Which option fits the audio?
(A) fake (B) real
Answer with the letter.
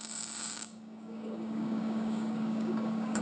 A